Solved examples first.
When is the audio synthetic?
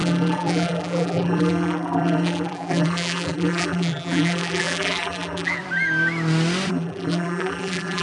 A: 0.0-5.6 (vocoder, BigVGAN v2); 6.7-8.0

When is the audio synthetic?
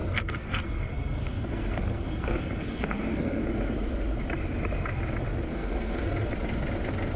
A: 0.0-3.4 (codec, SNAC); 5.5-6.3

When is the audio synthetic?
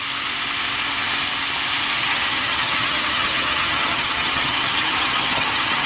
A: 2.1-5.9 (vocoder, HiFi-GAN)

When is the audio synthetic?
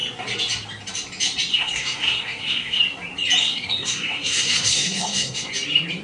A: 1.5-2.8 (codec, SNAC); 3.4-5.5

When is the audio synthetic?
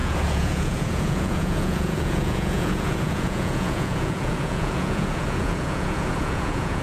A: 0.0-6.8 (vocoder, Vocos)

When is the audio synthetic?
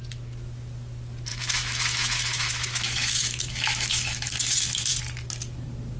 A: 1.3-4.9 (autoencoder, DAC-VAE)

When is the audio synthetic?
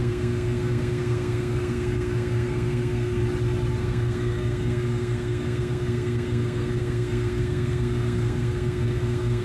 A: 0.0-3.2 (codec, SNAC); 3.8-9.4